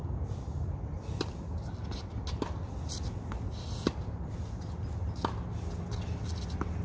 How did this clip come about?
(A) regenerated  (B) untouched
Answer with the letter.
B